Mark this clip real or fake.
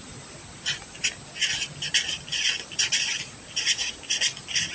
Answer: real